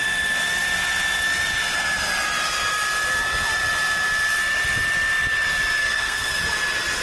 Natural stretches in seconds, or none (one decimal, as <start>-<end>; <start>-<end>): 0.0-5.8; 6.4-7.0